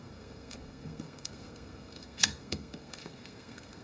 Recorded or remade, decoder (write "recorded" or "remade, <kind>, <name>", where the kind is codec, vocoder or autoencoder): remade, codec, SNAC